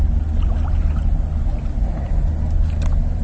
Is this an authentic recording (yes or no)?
yes